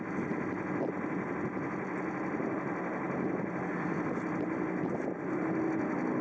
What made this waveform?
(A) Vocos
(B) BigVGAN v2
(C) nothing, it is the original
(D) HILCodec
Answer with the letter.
C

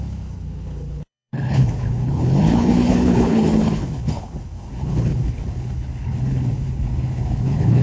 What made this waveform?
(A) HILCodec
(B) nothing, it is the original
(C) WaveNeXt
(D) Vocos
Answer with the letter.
A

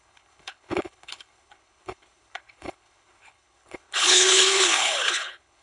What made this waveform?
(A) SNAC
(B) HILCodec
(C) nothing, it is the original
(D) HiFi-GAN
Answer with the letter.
B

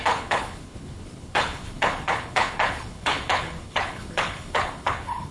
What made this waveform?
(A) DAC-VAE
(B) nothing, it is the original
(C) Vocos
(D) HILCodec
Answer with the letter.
D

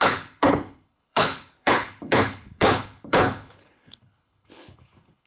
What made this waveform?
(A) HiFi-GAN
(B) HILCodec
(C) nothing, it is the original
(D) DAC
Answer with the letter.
B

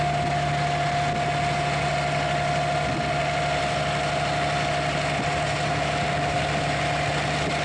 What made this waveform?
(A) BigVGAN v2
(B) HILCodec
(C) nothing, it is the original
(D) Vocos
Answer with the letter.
C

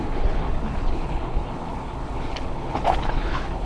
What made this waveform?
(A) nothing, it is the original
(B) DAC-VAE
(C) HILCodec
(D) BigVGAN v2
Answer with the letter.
C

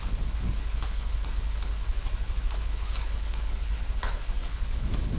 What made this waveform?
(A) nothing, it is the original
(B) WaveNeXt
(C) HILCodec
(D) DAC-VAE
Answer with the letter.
C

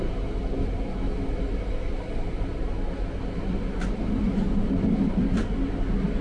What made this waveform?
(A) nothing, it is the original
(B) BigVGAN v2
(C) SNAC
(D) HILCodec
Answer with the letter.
A